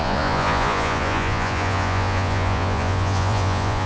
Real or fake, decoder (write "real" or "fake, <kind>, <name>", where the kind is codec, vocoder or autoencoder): fake, vocoder, Vocos